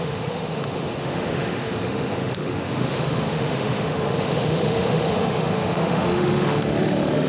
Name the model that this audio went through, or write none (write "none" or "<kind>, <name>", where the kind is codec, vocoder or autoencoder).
autoencoder, DAC-VAE